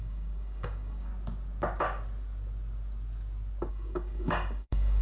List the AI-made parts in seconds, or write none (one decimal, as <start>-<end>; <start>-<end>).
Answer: 0.0-1.1; 3.7-5.0